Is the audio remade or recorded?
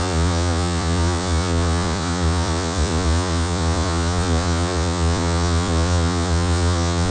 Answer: remade